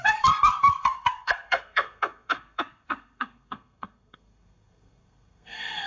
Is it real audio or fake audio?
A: fake